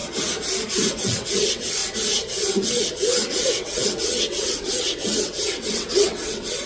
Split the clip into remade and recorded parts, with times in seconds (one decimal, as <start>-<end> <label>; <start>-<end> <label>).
0.0-0.9 recorded; 0.9-1.8 remade; 1.8-2.4 recorded; 2.4-6.7 remade

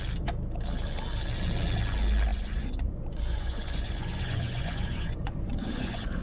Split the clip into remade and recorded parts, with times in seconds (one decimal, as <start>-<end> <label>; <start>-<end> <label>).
0.0-2.3 recorded; 2.3-6.2 remade

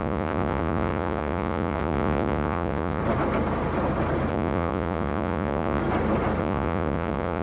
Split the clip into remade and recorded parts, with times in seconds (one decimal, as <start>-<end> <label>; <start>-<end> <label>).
0.0-3.0 remade; 3.0-4.3 recorded; 4.3-5.8 remade; 5.8-6.4 recorded; 6.4-7.4 remade

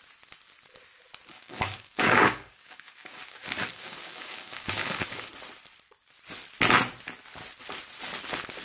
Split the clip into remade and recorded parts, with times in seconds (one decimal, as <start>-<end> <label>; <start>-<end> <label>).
0.0-1.3 recorded; 1.3-5.3 remade; 5.3-8.6 recorded

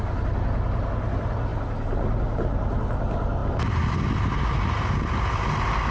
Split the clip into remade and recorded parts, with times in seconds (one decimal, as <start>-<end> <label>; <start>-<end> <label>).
0.0-5.9 recorded

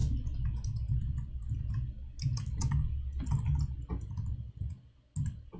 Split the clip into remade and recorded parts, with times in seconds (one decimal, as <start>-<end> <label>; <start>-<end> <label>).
0.0-5.6 recorded

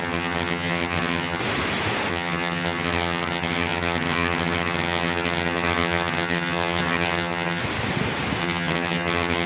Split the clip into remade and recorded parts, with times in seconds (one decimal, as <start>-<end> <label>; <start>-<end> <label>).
0.0-1.4 remade; 1.4-2.1 recorded; 2.1-7.6 remade; 7.6-8.4 recorded; 8.4-9.5 remade

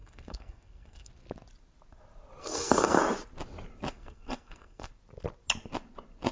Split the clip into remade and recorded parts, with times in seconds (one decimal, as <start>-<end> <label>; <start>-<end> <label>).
0.0-1.1 remade; 1.1-2.4 recorded; 2.4-3.0 remade; 3.0-3.9 recorded; 3.9-4.9 remade; 4.9-6.3 recorded